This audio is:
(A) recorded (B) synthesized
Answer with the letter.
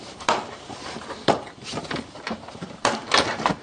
B